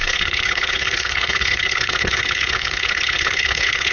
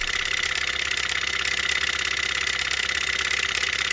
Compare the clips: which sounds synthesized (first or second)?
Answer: first